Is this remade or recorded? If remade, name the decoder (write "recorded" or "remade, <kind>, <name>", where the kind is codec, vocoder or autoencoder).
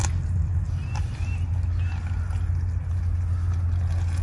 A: recorded